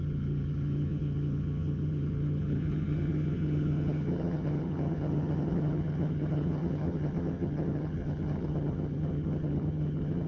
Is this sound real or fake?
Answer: fake